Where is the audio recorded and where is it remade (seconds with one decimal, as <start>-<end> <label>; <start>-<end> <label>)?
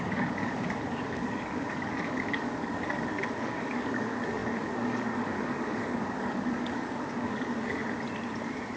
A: 0.0-7.8 remade; 7.8-8.8 recorded